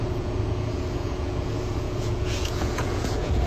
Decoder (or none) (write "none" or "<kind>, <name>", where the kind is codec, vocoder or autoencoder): vocoder, Vocos